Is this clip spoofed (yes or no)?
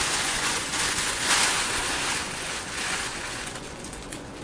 yes